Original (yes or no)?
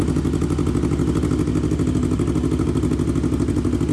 yes